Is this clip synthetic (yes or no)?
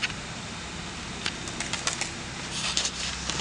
no